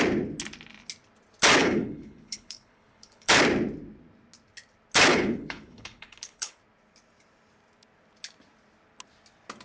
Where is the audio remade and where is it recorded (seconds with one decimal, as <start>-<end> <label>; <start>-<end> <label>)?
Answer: 0.0-1.6 recorded; 1.6-3.3 remade; 3.3-5.1 recorded; 5.1-6.6 remade; 6.6-9.6 recorded